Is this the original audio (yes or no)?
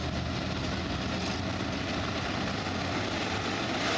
yes